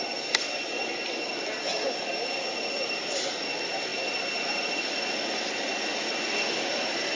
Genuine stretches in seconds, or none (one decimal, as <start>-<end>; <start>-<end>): 0.0-7.1